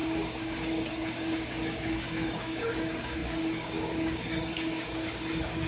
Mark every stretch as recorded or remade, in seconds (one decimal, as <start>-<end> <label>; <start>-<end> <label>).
0.0-5.7 remade